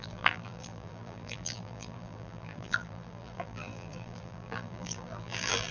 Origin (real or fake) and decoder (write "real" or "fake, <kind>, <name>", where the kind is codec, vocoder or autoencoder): fake, vocoder, BigVGAN v2